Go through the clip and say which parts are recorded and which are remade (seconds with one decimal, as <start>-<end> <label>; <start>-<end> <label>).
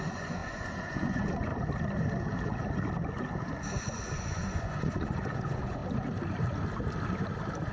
0.0-1.5 remade; 1.5-3.8 recorded; 3.8-5.8 remade; 5.8-7.7 recorded